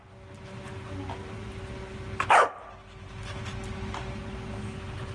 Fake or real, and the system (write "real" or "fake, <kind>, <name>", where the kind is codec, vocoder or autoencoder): real